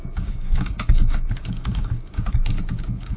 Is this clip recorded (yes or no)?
no